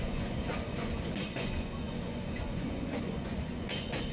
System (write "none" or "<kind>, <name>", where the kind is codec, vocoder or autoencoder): vocoder, Vocos